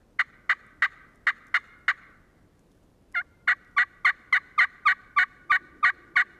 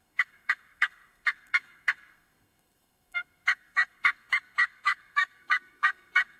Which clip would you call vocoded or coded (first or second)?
second